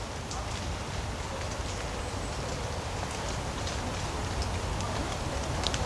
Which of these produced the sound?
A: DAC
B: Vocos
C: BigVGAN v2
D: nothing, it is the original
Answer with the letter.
C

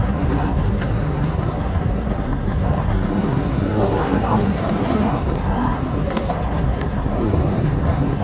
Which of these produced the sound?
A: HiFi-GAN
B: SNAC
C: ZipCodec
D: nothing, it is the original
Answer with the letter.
B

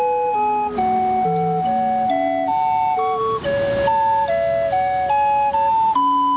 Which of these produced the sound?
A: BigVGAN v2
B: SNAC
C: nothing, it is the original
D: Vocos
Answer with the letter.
C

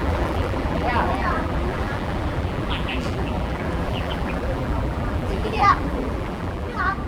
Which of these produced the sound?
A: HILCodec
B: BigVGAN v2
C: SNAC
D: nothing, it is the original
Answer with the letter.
B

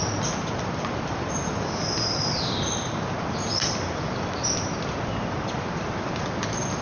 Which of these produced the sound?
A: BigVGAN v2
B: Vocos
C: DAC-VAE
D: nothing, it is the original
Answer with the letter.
D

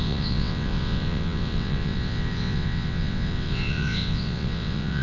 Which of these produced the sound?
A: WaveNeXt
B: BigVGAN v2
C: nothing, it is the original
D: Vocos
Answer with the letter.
A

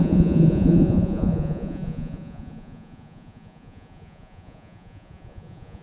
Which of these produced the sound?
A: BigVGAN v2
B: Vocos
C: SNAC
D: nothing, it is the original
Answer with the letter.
B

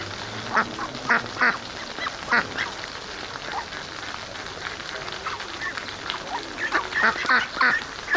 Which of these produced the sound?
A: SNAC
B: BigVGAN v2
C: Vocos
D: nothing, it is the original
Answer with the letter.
D